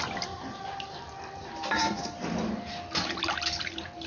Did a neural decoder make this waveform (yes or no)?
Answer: no